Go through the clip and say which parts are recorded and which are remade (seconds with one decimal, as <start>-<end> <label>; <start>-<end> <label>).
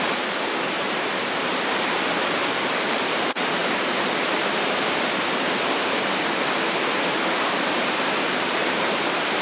0.0-3.6 remade; 3.6-4.4 recorded; 4.4-9.4 remade